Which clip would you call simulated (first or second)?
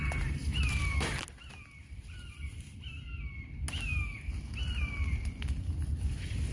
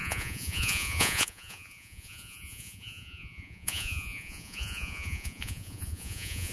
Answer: second